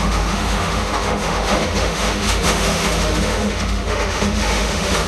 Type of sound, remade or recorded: remade